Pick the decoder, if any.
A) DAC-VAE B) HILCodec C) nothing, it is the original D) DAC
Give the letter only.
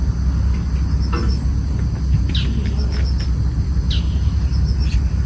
C